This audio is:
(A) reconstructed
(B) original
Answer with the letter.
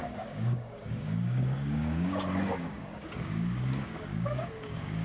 A